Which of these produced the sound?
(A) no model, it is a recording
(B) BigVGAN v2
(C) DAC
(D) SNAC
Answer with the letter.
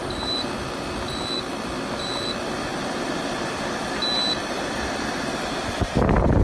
A